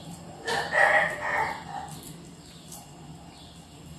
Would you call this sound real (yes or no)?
yes